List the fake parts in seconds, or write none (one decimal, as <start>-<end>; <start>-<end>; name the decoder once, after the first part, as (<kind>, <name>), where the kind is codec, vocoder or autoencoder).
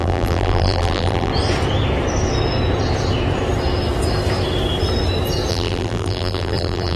0.0-1.3 (vocoder, BigVGAN v2); 5.5-7.0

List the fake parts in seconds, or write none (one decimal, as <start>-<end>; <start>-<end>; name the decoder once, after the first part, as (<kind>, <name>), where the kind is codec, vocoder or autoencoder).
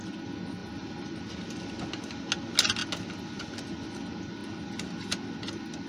none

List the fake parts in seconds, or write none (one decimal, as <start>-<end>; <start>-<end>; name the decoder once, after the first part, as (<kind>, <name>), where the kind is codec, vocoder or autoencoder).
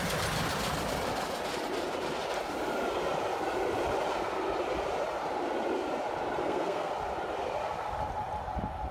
6.4-6.9 (codec, SNAC)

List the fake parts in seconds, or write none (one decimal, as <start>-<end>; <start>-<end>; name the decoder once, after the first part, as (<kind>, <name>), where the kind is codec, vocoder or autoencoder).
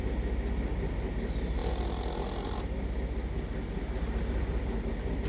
none